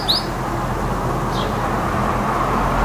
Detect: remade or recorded recorded